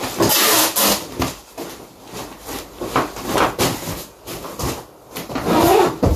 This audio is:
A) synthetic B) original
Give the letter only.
B